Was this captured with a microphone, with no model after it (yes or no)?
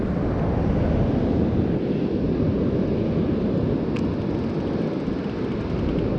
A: yes